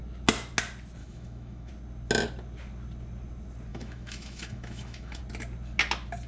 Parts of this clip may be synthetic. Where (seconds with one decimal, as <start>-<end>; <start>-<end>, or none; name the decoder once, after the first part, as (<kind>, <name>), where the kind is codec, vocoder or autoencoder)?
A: 1.0-1.7 (autoencoder, DAC-VAE); 3.7-5.2